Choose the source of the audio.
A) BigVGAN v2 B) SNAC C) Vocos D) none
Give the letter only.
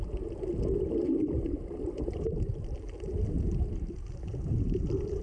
D